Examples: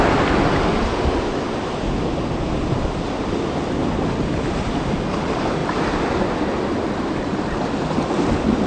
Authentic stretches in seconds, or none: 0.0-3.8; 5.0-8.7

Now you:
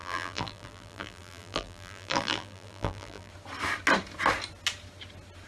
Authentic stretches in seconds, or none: 3.3-5.5

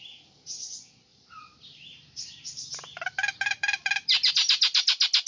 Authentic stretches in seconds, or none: 0.0-1.1; 4.3-5.3

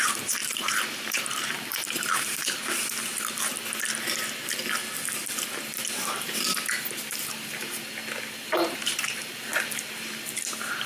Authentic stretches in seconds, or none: 2.6-7.1; 7.8-8.3; 9.5-10.9

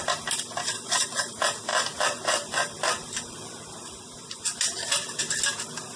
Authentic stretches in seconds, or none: 0.0-1.7; 5.2-6.0

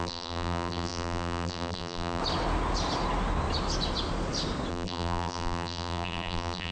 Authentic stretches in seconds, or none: 2.2-4.7